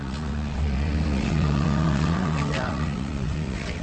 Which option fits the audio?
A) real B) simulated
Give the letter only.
B